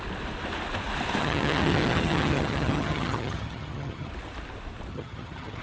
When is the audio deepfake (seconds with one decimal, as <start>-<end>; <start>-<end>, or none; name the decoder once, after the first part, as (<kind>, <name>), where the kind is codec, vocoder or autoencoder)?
1.2-4.1 (vocoder, HiFi-GAN); 4.9-5.6

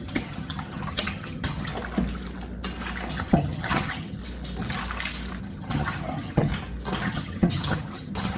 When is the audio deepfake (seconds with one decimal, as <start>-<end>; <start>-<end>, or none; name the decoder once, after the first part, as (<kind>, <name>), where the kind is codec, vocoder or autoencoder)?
0.0-1.7 (vocoder, HiFi-GAN); 3.1-4.2; 5.4-6.5; 7.0-8.4

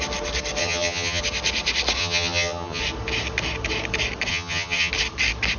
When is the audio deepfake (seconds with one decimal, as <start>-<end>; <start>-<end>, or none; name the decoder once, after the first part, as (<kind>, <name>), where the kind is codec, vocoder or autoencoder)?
0.6-1.2 (vocoder, HiFi-GAN); 2.0-2.8; 4.3-4.9

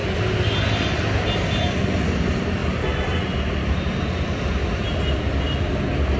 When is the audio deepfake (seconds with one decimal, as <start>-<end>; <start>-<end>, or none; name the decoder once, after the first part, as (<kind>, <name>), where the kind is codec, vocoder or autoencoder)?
none

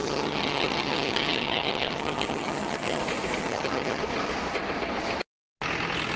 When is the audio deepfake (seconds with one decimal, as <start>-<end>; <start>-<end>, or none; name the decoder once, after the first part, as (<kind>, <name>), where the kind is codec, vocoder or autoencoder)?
0.0-3.0 (vocoder, HiFi-GAN); 3.4-4.0

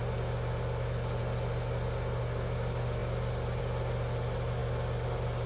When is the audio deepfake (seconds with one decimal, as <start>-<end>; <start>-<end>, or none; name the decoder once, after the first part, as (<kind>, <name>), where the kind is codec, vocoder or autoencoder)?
none